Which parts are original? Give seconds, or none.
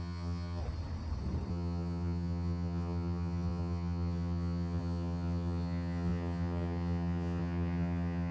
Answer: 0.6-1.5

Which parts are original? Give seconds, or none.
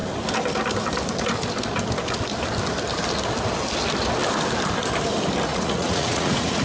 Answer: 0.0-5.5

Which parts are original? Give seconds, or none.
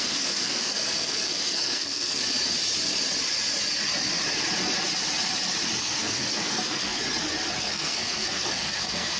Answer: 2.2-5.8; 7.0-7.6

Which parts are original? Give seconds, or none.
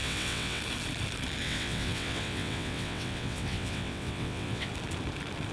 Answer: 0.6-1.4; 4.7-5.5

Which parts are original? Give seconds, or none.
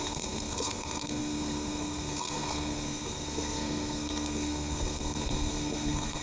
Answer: none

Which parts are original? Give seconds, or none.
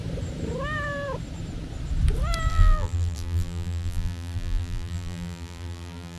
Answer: 0.0-2.5